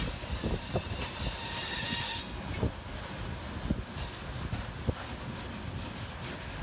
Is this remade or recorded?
recorded